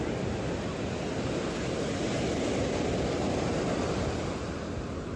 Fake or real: real